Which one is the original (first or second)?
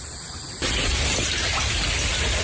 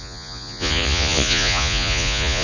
first